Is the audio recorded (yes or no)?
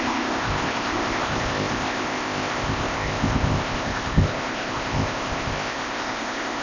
no